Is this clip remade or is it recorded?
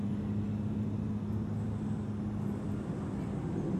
recorded